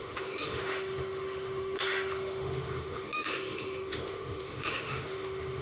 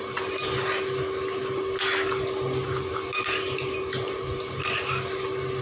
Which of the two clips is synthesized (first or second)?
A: first